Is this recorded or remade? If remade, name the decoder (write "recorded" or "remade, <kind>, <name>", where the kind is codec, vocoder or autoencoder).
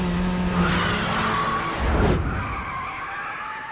recorded